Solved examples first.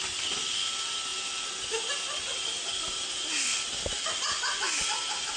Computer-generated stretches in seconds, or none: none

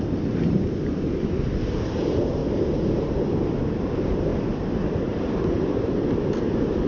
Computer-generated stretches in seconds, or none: 0.0-2.4 (vocoder, BigVGAN v2); 3.5-6.9

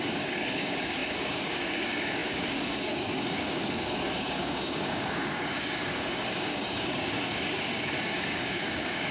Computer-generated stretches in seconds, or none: 0.0-9.1 (codec, DAC)

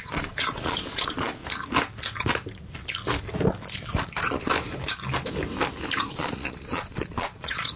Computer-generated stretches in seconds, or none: 0.0-1.4 (vocoder, Vocos); 4.0-4.5; 6.1-7.8

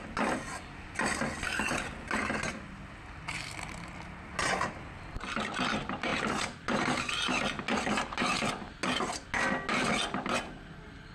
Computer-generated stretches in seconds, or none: none